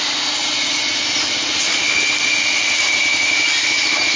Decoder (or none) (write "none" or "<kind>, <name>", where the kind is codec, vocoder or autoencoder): none